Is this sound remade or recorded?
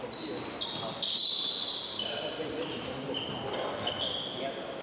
recorded